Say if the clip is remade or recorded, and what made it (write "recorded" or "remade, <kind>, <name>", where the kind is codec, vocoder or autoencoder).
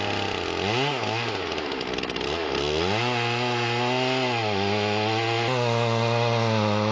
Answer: recorded